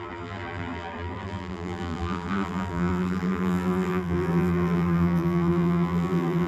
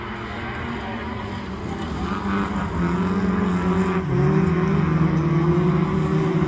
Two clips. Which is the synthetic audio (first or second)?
first